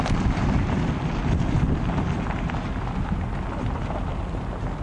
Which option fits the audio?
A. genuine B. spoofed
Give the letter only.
A